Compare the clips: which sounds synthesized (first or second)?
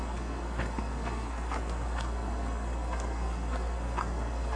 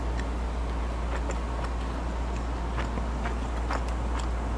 first